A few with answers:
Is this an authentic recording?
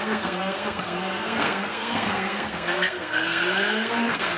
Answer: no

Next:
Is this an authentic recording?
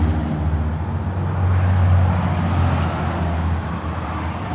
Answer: yes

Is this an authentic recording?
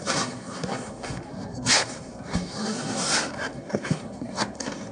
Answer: no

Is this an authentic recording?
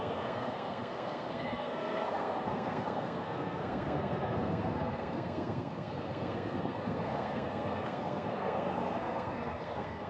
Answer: no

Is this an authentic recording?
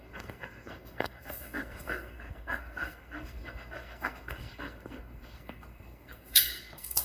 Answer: no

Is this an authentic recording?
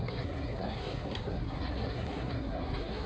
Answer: no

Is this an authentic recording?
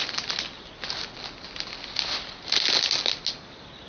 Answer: yes